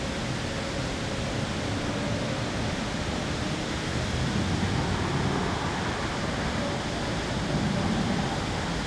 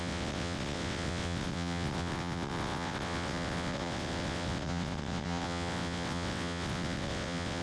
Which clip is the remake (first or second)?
second